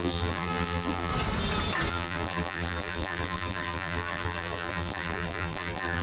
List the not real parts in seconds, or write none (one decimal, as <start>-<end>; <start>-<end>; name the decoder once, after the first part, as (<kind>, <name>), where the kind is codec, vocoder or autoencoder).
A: 0.0-1.1 (vocoder, BigVGAN v2); 1.9-6.0